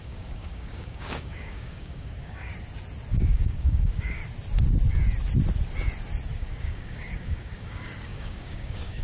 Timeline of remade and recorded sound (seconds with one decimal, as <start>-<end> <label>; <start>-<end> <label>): 0.0-2.5 remade; 2.5-3.1 recorded; 3.1-4.2 remade; 4.2-6.4 recorded; 6.4-9.0 remade